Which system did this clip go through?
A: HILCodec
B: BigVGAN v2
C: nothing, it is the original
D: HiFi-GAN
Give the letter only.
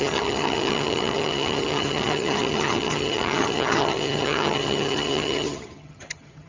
D